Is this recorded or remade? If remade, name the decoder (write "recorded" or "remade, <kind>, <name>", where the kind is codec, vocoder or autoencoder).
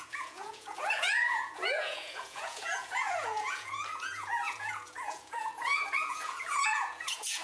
remade, vocoder, Vocos